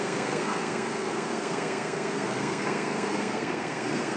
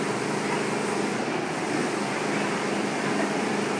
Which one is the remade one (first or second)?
first